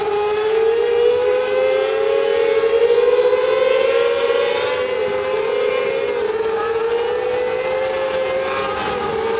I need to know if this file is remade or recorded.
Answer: recorded